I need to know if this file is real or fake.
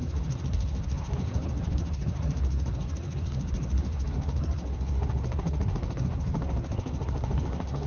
fake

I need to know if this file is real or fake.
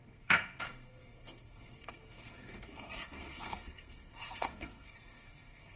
fake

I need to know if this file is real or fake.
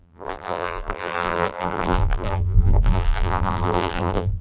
fake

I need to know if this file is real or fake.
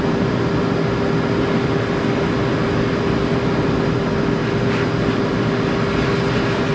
real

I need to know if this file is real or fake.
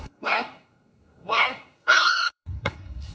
fake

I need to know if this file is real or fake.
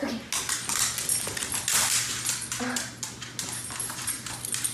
real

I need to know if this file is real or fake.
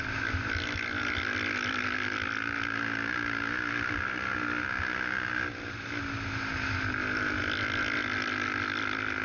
real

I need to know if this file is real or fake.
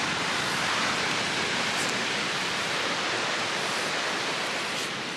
real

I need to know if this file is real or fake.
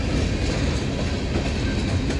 real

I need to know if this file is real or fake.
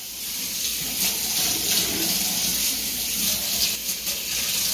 real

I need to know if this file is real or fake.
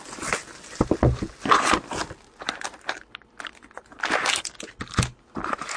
real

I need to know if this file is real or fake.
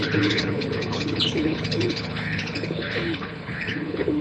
fake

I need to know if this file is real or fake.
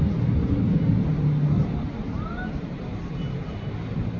real